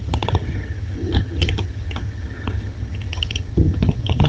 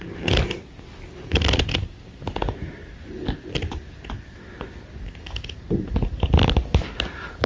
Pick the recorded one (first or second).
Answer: second